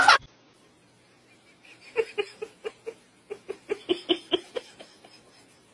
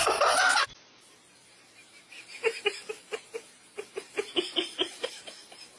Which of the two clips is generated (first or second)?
second